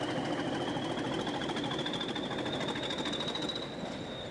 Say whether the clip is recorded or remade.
recorded